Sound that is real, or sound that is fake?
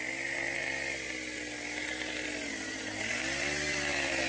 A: real